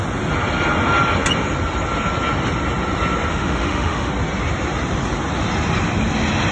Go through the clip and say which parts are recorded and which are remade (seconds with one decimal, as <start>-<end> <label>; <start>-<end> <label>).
0.0-3.3 recorded; 3.3-4.1 remade; 4.1-6.5 recorded